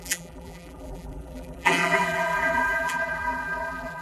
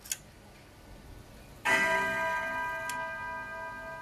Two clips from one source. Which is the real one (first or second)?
second